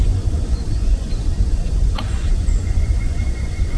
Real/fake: fake